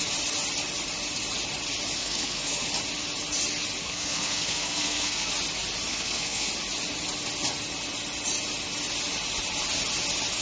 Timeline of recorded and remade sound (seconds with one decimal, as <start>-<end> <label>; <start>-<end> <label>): 0.0-2.0 recorded; 2.0-2.7 remade; 2.7-3.8 recorded; 3.8-5.3 remade; 5.3-5.9 recorded; 5.9-6.5 remade; 6.5-10.4 recorded